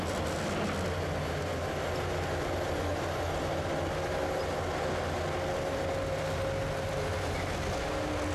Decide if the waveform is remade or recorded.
recorded